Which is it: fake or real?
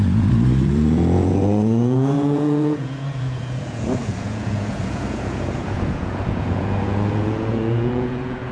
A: fake